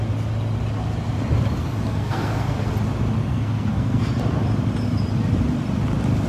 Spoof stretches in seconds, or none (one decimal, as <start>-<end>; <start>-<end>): 1.6-2.7; 3.2-4.1